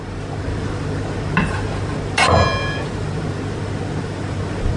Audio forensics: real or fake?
real